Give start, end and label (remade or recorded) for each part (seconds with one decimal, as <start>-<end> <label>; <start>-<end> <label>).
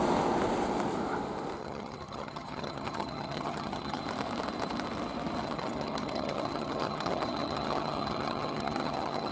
0.0-1.6 recorded; 1.6-4.0 remade; 4.0-5.4 recorded; 5.4-9.3 remade